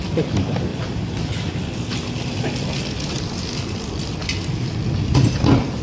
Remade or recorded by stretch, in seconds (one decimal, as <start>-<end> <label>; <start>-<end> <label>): 0.0-5.8 recorded

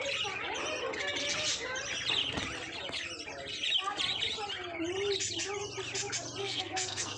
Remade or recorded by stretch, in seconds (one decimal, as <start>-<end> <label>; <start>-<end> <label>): 0.0-6.4 recorded; 6.4-7.2 remade

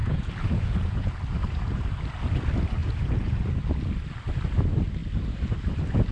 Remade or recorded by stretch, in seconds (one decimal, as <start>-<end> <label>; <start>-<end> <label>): 0.0-1.1 remade; 1.1-2.8 recorded; 2.8-3.6 remade; 3.6-6.1 recorded

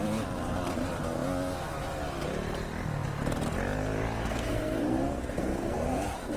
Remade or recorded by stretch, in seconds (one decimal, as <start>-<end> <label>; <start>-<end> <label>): 0.0-4.2 recorded; 4.2-6.4 remade

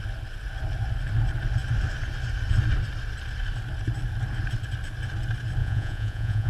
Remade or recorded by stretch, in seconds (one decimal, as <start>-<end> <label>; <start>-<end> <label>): 0.0-5.6 recorded; 5.6-6.5 remade

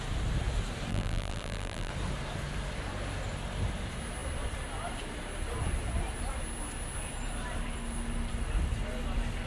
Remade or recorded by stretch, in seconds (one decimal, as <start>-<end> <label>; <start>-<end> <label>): 0.0-0.9 recorded; 0.9-1.9 remade; 1.9-9.5 recorded

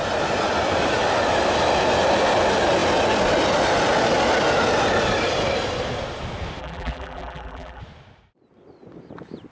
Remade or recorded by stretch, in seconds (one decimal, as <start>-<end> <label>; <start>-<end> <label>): 0.0-6.6 recorded; 6.6-7.8 remade; 7.8-9.5 recorded